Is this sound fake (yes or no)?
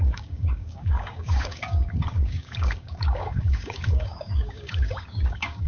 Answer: yes